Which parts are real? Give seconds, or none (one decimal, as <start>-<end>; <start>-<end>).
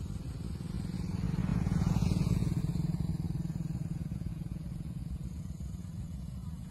0.0-1.5; 2.6-3.9